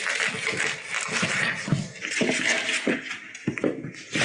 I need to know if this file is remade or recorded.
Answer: recorded